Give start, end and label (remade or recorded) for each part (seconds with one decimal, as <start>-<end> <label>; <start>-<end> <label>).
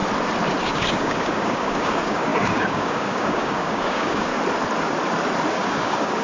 0.0-0.6 recorded; 0.6-4.3 remade; 4.3-5.5 recorded; 5.5-6.2 remade